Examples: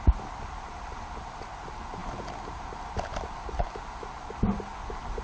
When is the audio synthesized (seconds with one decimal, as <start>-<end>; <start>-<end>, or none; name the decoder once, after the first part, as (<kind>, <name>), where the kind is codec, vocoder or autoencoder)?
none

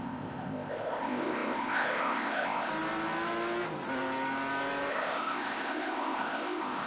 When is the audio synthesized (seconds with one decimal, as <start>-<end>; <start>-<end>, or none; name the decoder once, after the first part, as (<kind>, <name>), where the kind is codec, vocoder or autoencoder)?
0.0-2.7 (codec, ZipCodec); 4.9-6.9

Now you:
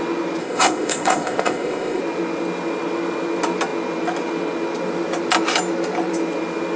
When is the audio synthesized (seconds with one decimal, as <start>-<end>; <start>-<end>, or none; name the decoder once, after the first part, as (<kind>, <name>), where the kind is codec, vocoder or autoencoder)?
0.4-2.0 (codec, ZipCodec)

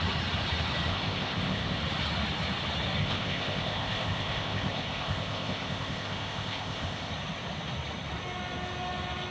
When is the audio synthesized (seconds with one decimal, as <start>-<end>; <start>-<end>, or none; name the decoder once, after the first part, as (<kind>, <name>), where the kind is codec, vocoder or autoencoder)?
0.9-1.8 (codec, ZipCodec); 3.0-7.1

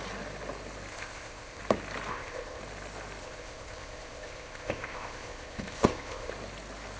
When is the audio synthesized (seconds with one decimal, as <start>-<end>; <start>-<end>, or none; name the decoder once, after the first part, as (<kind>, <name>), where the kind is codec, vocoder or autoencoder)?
0.9-1.6 (codec, ZipCodec); 2.1-2.6; 3.2-6.3

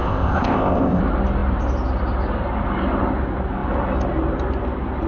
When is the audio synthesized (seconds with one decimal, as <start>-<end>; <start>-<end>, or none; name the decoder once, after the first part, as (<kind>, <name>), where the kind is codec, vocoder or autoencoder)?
0.0-1.0 (codec, ZipCodec)